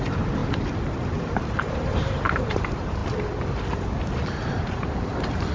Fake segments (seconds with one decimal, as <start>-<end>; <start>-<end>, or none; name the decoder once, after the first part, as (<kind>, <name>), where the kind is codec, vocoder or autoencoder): 0.0-0.4 (vocoder, BigVGAN v2); 1.2-3.0; 4.3-5.5